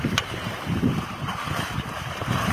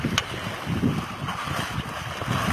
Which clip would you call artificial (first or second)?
first